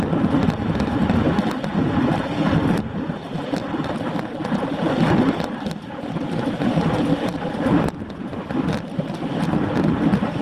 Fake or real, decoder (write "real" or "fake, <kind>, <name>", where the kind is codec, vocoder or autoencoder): real